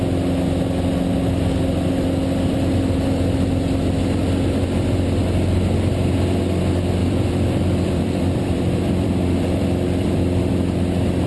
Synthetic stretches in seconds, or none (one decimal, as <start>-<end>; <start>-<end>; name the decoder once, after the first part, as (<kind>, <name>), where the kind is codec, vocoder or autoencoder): 7.0-10.5 (vocoder, BigVGAN v2)